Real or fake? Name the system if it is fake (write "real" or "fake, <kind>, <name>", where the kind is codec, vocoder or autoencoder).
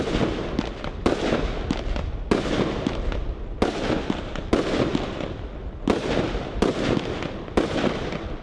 real